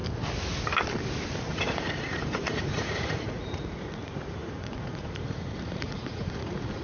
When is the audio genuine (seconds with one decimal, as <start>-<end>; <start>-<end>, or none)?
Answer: 0.0-1.5